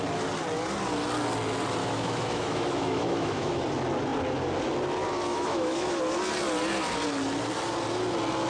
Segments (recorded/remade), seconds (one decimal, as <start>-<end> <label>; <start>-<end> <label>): 0.0-1.8 recorded; 1.8-3.6 remade; 3.6-5.3 recorded; 5.3-6.0 remade; 6.0-8.5 recorded